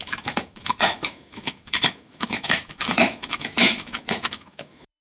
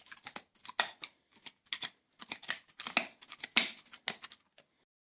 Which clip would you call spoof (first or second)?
first